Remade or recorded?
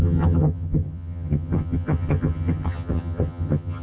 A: remade